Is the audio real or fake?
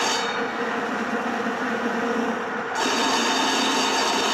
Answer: real